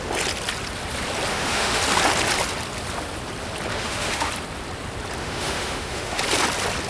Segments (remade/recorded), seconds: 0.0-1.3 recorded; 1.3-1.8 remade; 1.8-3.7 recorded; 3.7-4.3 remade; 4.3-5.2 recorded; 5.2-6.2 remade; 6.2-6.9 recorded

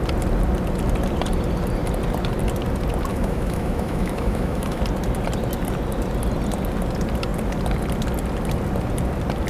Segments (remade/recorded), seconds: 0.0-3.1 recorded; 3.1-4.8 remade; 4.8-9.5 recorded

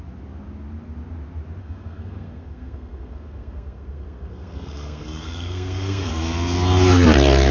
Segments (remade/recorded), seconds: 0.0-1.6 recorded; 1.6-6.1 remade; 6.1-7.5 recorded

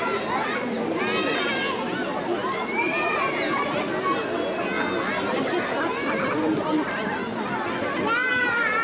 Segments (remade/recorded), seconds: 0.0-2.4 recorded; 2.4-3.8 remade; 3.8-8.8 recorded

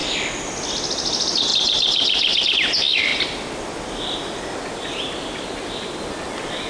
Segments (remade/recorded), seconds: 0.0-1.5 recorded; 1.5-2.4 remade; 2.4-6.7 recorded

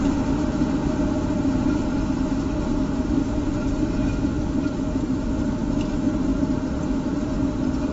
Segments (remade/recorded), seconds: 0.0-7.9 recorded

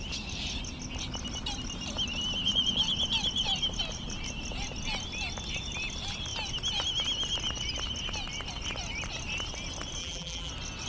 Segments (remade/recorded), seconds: 0.0-10.0 recorded; 10.0-10.5 remade; 10.5-10.9 recorded